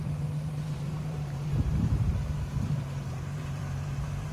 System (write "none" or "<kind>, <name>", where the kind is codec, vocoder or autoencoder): vocoder, BigVGAN v2